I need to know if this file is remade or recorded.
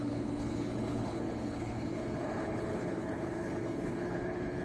remade